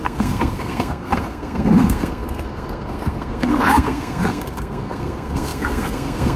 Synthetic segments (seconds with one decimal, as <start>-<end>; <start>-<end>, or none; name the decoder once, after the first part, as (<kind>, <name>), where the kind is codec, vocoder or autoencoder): 0.0-6.4 (codec, SNAC)